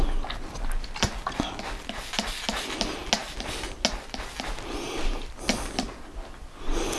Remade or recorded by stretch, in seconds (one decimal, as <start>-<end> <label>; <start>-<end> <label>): 0.0-7.0 recorded